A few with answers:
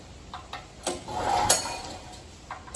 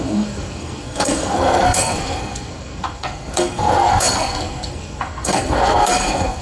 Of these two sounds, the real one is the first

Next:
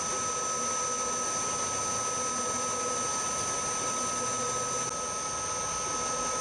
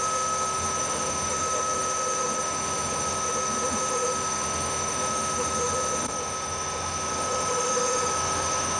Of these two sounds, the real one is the first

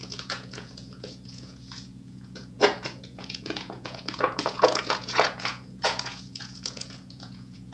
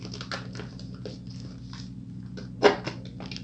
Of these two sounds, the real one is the second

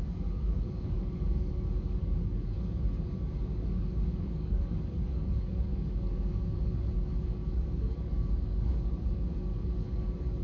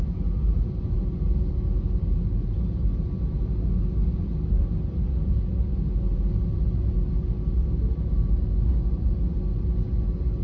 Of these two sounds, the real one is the second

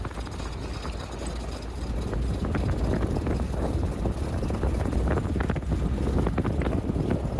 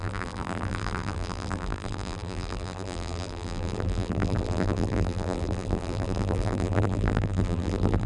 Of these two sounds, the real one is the first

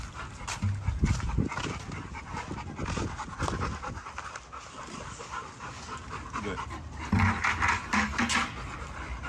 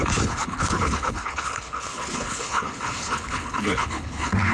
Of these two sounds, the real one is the first